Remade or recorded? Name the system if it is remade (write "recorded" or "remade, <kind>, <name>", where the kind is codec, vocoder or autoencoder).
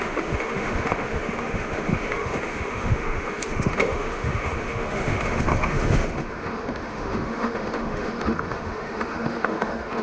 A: remade, autoencoder, DAC-VAE